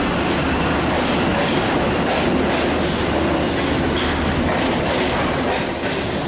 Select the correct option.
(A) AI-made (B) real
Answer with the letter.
B